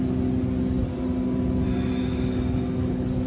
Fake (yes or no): no